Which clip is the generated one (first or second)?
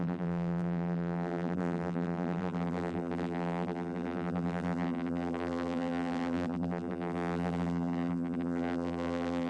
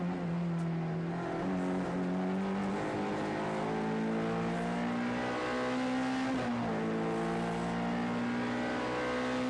first